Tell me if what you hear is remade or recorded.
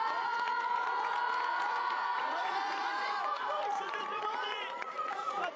remade